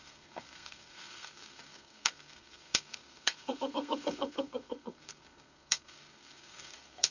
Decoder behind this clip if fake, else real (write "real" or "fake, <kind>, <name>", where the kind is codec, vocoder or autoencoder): fake, codec, SNAC